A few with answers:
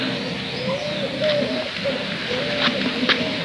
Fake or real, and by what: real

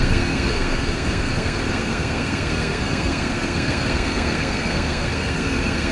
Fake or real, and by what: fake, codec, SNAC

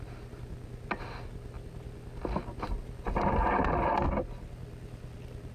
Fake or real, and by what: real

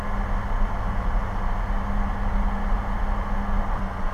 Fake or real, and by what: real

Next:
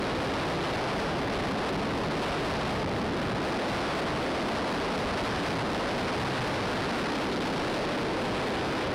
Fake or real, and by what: real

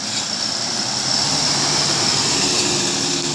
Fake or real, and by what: real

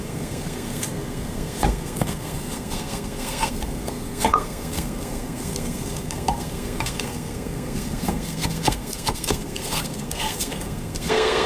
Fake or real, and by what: fake, codec, SNAC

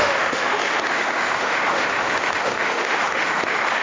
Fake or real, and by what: fake, autoencoder, DAC-VAE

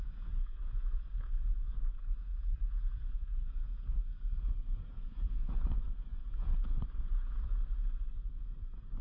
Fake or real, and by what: fake, vocoder, Vocos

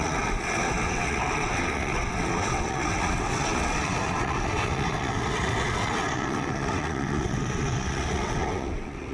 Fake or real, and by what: fake, vocoder, WaveNeXt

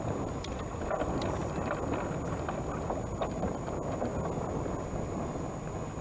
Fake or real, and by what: real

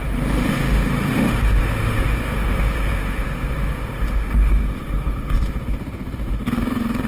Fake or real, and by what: fake, autoencoder, DAC-VAE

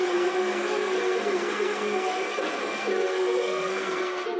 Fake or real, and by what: fake, codec, SNAC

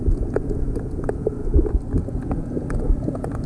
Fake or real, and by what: fake, vocoder, Vocos